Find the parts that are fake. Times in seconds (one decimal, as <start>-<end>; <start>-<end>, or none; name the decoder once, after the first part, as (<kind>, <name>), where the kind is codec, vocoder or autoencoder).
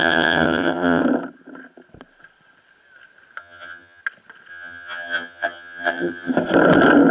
0.0-1.0 (vocoder, HiFi-GAN); 3.4-4.0; 4.5-6.3